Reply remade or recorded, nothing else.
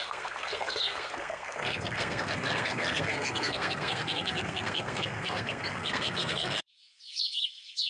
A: remade